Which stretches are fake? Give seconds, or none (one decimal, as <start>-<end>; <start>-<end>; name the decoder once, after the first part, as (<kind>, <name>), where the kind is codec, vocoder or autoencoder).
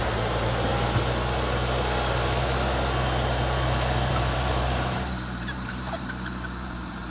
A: 0.0-0.7 (vocoder, BigVGAN v2); 4.1-7.1